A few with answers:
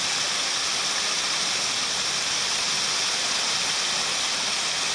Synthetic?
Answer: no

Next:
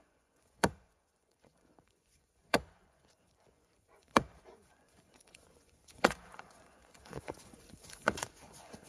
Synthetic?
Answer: yes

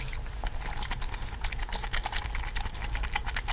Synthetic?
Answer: no